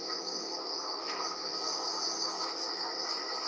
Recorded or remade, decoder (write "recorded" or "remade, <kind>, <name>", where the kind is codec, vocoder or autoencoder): remade, autoencoder, DAC-VAE